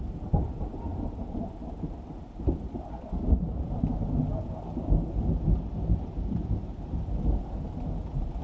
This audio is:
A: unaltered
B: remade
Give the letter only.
A